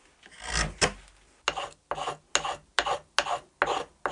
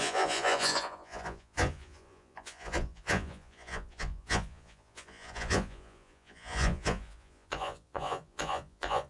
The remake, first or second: second